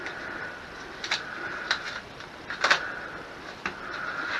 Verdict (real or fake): fake